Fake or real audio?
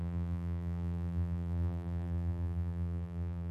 fake